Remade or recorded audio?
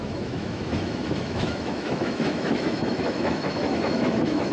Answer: remade